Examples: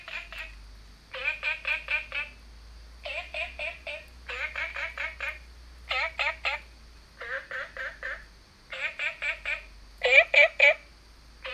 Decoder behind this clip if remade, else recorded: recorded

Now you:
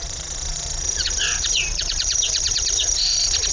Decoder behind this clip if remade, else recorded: remade, vocoder, Vocos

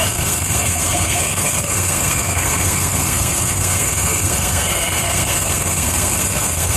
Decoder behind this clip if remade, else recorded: remade, codec, SNAC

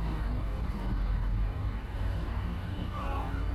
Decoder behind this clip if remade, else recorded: remade, codec, DAC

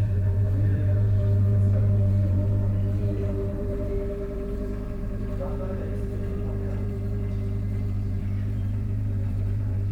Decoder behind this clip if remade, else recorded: remade, vocoder, BigVGAN v2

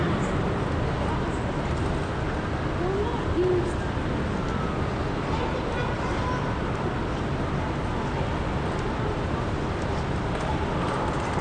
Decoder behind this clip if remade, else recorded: recorded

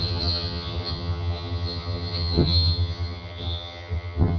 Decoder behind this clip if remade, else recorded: remade, vocoder, HiFi-GAN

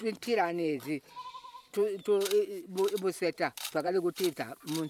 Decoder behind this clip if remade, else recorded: remade, vocoder, BigVGAN v2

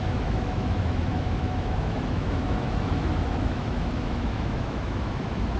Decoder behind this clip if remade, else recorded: remade, autoencoder, DAC-VAE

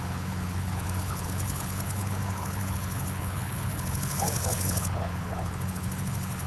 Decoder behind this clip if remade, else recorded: remade, codec, HILCodec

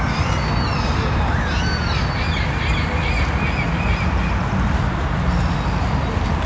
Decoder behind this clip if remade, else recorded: recorded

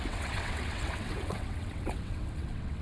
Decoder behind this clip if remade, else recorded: remade, vocoder, WaveNeXt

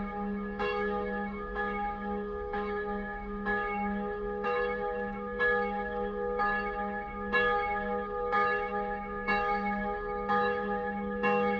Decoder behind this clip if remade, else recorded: remade, autoencoder, DAC-VAE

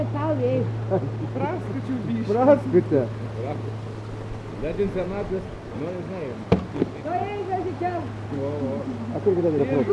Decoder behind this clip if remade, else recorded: recorded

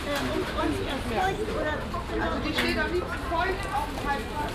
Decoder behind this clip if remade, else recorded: recorded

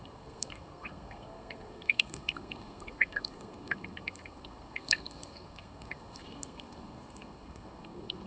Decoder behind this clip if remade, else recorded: remade, codec, SNAC